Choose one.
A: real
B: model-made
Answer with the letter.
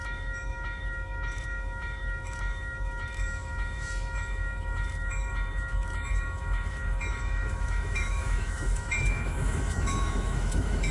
B